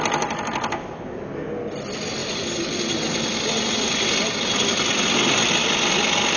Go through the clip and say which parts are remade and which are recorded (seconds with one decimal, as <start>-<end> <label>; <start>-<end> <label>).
0.0-6.4 recorded